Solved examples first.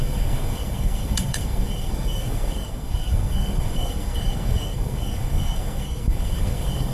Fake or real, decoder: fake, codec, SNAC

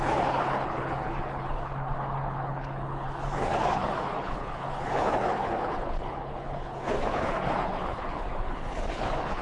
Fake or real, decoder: fake, codec, HILCodec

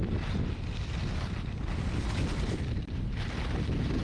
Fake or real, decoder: real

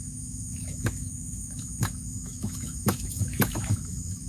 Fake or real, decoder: fake, autoencoder, DAC-VAE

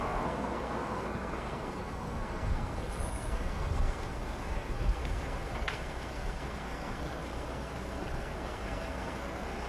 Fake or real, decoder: fake, codec, SNAC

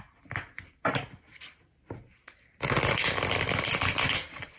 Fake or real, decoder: real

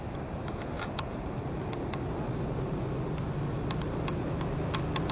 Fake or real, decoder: real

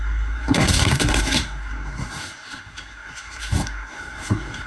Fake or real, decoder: fake, codec, SNAC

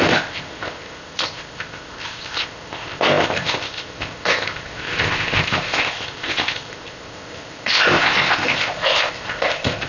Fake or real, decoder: fake, codec, ZipCodec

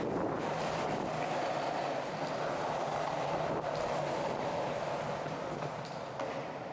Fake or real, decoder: real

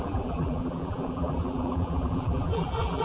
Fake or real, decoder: fake, vocoder, BigVGAN v2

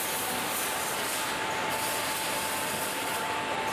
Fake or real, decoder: real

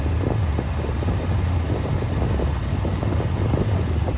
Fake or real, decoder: real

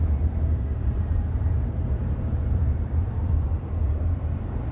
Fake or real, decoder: fake, vocoder, BigVGAN v2